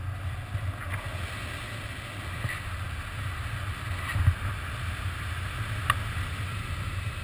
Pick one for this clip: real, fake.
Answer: real